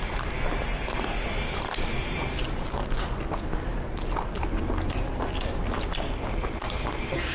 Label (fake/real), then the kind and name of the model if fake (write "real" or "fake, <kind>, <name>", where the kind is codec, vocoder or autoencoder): real